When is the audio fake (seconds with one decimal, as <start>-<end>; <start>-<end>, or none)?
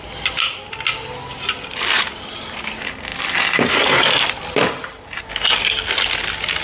none